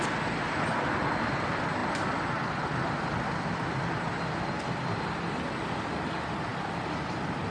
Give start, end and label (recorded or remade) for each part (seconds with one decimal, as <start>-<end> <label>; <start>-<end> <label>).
0.0-7.5 recorded